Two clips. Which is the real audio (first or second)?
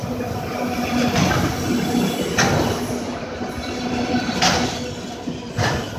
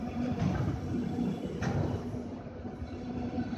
first